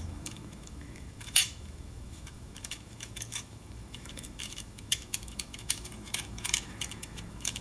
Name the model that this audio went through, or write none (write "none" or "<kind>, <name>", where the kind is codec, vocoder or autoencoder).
autoencoder, DAC-VAE